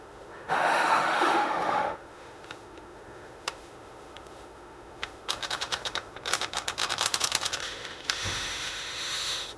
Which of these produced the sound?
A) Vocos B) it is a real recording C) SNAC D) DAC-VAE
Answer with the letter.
D